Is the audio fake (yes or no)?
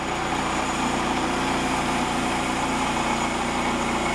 no